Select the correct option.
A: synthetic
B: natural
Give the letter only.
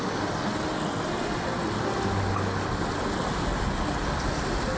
B